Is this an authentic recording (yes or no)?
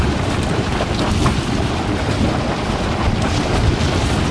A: yes